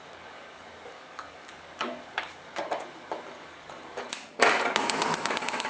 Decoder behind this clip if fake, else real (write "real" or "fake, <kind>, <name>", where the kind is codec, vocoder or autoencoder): fake, codec, DAC